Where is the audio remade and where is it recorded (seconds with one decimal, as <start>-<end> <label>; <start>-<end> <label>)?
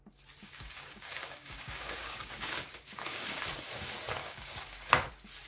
0.0-0.4 recorded; 0.4-3.4 remade; 3.4-4.2 recorded; 4.2-4.9 remade; 4.9-5.5 recorded